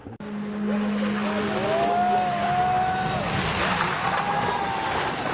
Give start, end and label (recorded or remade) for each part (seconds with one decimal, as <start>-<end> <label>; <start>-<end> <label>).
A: 0.0-5.3 recorded